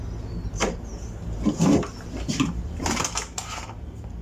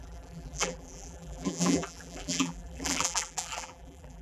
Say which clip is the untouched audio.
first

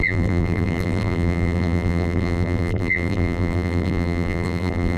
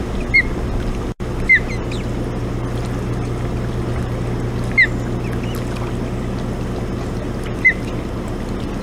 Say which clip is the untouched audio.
second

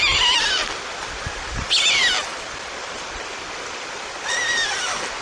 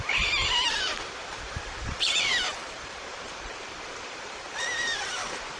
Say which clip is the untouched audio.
first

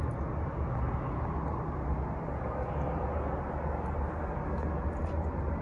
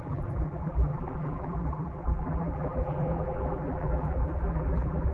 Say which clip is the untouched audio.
first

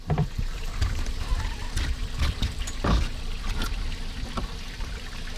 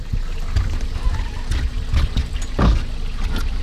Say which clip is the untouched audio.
second